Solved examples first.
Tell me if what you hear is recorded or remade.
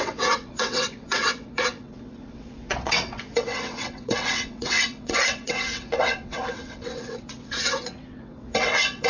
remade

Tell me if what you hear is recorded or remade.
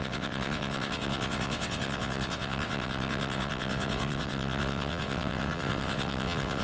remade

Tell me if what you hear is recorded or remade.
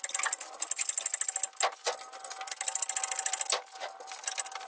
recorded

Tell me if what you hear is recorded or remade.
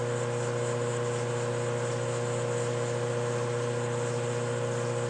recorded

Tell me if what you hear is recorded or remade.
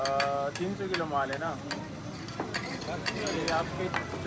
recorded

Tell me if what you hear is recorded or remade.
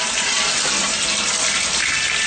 recorded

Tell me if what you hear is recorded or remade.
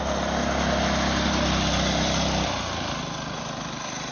recorded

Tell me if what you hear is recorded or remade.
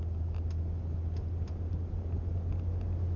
recorded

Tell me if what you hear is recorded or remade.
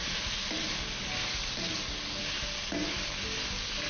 recorded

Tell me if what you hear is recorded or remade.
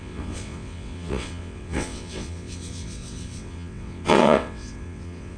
remade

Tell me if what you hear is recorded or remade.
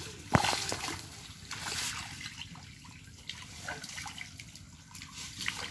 recorded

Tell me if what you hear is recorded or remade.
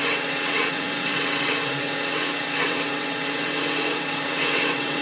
remade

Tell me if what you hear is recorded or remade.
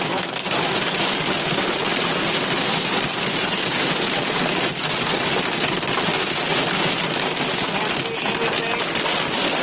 recorded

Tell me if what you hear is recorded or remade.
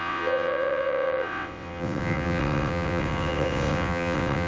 remade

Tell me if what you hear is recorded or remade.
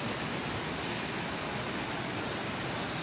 recorded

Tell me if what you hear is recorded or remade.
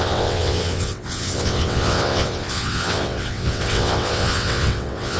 remade